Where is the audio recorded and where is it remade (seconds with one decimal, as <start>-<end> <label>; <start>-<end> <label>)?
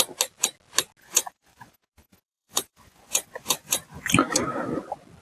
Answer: 0.0-1.0 recorded; 1.0-4.1 remade; 4.1-5.2 recorded